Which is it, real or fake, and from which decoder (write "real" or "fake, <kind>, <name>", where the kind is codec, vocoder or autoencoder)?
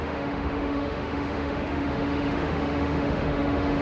fake, autoencoder, DAC-VAE